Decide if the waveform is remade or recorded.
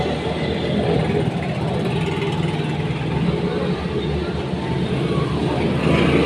recorded